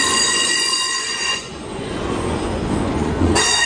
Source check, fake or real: fake